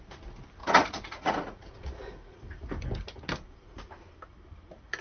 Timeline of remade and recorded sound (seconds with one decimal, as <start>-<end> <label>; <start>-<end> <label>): 0.0-0.6 recorded; 0.6-2.7 remade; 2.7-5.0 recorded